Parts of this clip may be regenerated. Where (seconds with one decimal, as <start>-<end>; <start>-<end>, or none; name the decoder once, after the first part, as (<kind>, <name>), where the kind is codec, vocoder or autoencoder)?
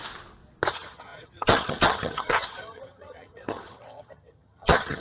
0.7-5.0 (vocoder, HiFi-GAN)